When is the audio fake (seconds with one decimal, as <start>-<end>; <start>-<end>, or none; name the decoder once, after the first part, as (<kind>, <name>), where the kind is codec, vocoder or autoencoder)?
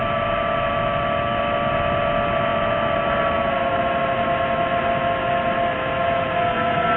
none